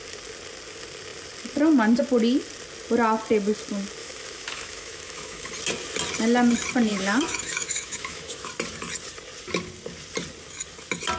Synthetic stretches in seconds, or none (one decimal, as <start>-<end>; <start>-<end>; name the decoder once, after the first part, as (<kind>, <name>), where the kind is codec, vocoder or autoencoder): 4.0-5.5 (autoencoder, DAC-VAE); 6.9-8.5